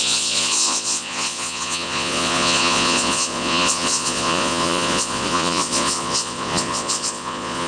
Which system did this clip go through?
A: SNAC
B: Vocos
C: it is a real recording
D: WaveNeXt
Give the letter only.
B